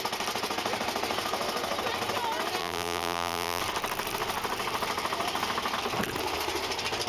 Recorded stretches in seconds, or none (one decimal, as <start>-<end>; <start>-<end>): 0.0-2.6; 3.6-7.1